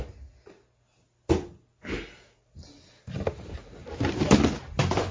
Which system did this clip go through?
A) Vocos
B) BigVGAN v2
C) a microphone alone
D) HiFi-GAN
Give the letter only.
C